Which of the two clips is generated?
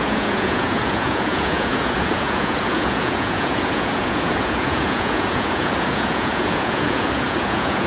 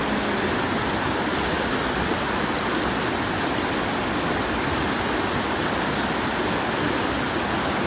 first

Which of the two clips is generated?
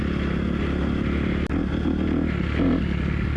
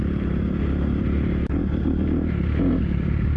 second